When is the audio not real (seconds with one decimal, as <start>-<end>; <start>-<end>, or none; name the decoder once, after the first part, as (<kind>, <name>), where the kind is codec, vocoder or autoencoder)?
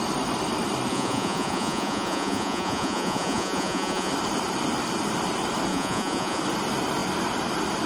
0.9-4.1 (vocoder, Vocos); 5.7-6.4